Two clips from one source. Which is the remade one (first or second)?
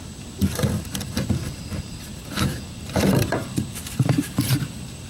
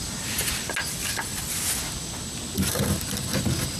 first